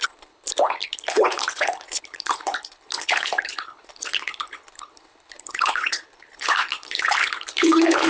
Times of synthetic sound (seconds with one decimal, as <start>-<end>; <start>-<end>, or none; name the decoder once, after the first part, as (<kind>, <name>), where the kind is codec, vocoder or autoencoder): 0.0-8.1 (codec, HILCodec)